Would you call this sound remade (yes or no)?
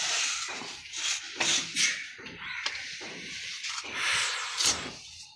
yes